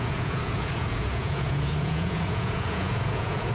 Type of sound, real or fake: fake